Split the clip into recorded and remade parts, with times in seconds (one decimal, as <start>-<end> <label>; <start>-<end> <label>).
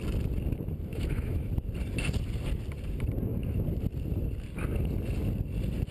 0.0-0.9 recorded; 0.9-1.5 remade; 1.5-5.9 recorded